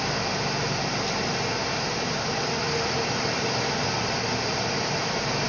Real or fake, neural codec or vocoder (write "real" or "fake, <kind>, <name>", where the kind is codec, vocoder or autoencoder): real